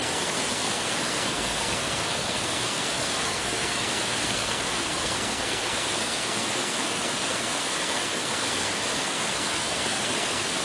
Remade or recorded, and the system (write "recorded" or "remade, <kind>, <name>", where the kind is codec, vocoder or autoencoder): remade, codec, SNAC